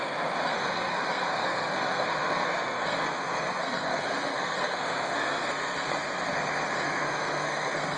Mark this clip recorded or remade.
remade